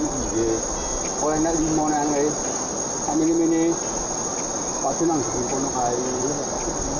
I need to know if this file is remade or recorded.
recorded